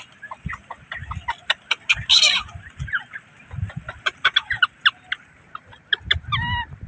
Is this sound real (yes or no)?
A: yes